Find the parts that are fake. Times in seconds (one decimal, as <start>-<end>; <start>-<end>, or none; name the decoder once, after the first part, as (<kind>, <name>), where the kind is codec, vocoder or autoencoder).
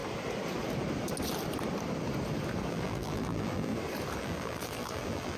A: 2.7-3.7 (vocoder, BigVGAN v2); 4.2-5.4